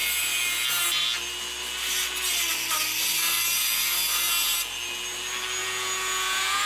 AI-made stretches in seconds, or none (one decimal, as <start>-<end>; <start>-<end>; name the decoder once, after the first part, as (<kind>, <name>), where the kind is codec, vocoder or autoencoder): 5.6-6.7 (vocoder, Vocos)